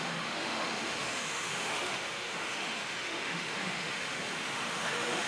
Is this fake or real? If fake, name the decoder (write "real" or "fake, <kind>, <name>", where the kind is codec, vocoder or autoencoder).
fake, autoencoder, DAC-VAE